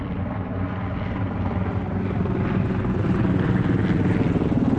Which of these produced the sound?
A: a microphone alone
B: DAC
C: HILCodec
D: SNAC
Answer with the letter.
A